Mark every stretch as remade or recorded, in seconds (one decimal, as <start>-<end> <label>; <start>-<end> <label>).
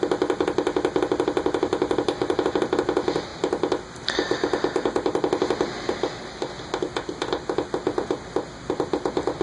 0.0-9.4 recorded